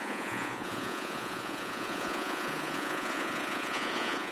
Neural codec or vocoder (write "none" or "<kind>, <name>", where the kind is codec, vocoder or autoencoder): vocoder, Vocos